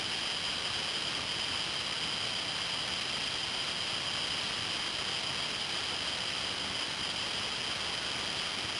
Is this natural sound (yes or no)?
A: yes